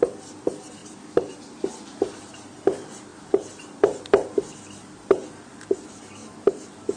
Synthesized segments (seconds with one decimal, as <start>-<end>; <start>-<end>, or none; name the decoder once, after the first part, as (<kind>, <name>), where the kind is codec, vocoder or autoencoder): 0.8-1.4 (vocoder, BigVGAN v2); 3.1-4.1